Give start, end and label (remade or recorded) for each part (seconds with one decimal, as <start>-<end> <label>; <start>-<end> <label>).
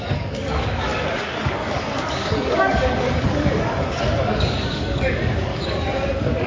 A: 0.0-6.5 remade